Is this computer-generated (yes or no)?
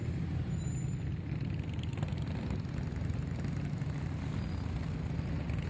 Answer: no